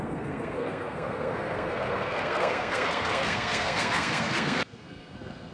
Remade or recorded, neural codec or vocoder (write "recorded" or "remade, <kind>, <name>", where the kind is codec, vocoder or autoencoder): remade, codec, SNAC